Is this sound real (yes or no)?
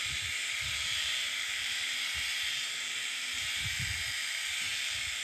no